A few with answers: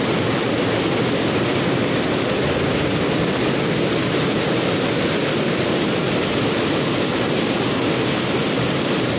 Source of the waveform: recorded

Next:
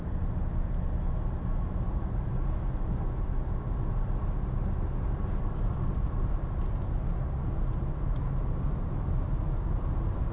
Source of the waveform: recorded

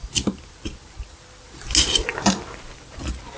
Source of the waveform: recorded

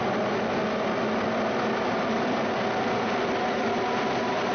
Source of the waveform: recorded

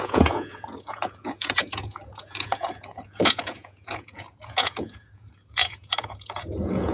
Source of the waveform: remade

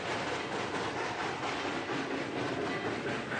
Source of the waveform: recorded